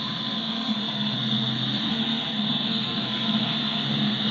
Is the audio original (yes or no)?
no